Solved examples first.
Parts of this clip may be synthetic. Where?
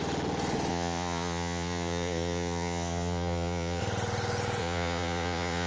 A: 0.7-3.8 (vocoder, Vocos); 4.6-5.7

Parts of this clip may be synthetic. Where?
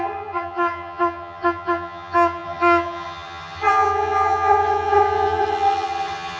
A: 0.0-6.4 (vocoder, HiFi-GAN)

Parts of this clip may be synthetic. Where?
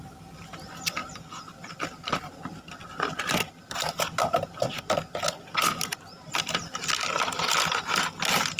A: 1.0-4.8 (vocoder, BigVGAN v2)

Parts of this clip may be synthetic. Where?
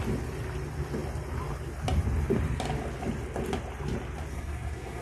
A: 4.3-5.0 (codec, SNAC)